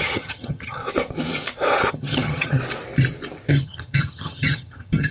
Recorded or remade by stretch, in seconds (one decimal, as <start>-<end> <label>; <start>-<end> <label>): 0.0-0.8 remade; 0.8-1.9 recorded; 1.9-2.6 remade; 2.6-3.5 recorded; 3.5-5.1 remade